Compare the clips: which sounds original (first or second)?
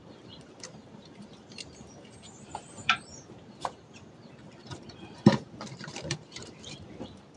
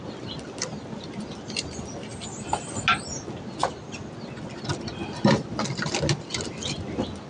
second